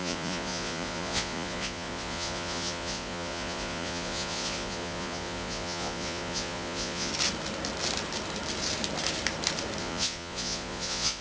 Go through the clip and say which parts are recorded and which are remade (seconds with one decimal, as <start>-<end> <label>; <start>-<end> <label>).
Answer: 0.0-7.1 remade; 7.1-9.8 recorded; 9.8-11.2 remade